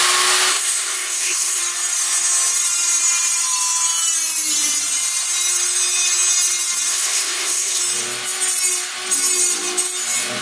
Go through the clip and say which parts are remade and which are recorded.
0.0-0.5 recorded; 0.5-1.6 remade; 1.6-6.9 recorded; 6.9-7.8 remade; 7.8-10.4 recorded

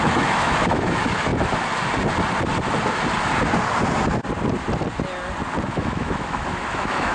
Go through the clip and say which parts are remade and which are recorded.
0.0-1.3 remade; 1.3-5.6 recorded; 5.6-7.1 remade

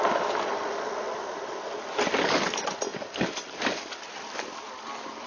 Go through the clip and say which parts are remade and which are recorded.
0.0-2.9 recorded; 2.9-4.0 remade; 4.0-5.3 recorded

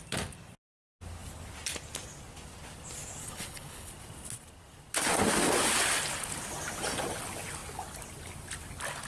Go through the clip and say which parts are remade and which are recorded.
0.0-3.2 recorded; 3.2-3.9 remade; 3.9-9.1 recorded

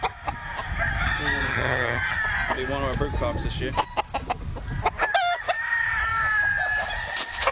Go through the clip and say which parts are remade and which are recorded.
0.0-1.5 recorded; 1.5-2.2 remade; 2.2-7.5 recorded

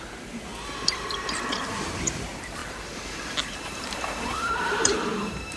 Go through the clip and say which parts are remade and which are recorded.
0.0-0.5 remade; 0.5-1.5 recorded; 1.5-5.6 remade